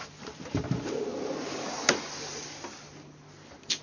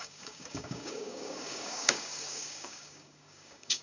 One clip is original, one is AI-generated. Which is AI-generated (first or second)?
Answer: second